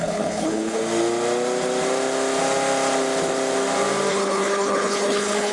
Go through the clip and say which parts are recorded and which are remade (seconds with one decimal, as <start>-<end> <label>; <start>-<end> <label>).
0.0-0.8 remade; 0.8-4.1 recorded; 4.1-5.5 remade